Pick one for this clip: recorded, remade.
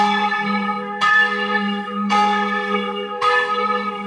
remade